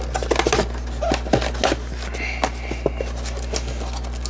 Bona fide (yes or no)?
yes